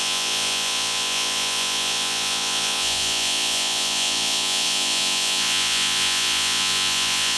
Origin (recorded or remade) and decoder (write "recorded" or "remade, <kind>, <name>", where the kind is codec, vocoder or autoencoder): remade, vocoder, Vocos